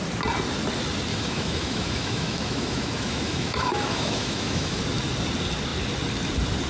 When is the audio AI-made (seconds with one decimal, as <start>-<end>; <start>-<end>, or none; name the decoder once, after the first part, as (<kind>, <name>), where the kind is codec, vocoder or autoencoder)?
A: 1.1-4.8 (autoencoder, DAC-VAE)